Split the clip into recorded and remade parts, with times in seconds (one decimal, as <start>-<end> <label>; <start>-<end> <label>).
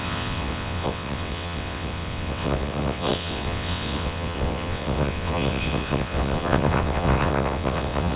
0.0-8.2 remade